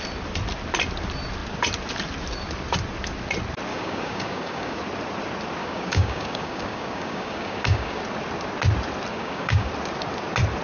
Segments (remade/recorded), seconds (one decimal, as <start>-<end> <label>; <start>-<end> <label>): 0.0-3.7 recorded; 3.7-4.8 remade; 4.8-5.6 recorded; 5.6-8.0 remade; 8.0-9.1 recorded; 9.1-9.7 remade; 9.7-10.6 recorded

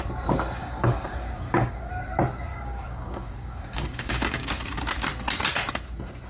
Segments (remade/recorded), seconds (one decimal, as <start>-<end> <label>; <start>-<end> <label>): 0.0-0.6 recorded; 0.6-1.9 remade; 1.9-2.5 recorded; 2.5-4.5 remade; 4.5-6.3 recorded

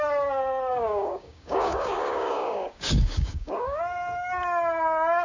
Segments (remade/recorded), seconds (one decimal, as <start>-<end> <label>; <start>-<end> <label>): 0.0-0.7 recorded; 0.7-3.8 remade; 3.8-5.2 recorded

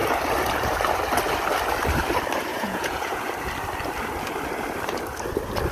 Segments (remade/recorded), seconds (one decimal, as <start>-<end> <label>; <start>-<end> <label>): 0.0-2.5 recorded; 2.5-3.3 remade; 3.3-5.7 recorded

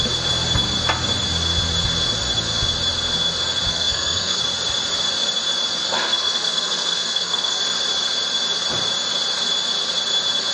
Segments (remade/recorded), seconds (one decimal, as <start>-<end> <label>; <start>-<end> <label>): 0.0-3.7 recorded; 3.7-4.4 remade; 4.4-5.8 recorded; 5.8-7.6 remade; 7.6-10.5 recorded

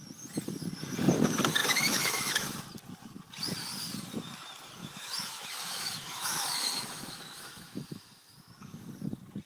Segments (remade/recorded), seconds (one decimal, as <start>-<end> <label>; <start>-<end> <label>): 0.0-1.6 recorded; 1.6-2.6 remade; 2.6-4.8 recorded; 4.8-8.9 remade; 8.9-9.5 recorded

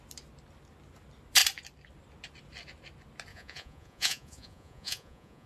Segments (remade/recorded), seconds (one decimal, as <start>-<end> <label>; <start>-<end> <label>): 0.0-3.3 recorded; 3.3-5.5 remade

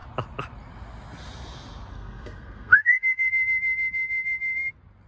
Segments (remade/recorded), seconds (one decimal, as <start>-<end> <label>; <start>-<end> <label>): 0.0-1.9 recorded; 1.9-3.3 remade; 3.3-5.1 recorded